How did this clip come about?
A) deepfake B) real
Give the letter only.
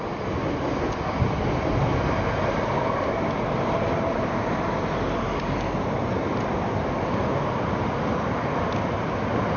B